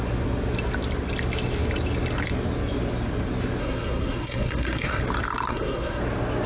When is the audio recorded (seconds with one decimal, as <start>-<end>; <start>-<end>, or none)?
0.0-3.6; 5.0-5.5; 6.0-6.5